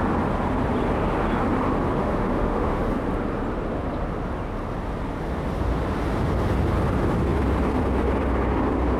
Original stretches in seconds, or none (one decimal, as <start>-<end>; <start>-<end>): 0.0-2.0; 2.8-9.0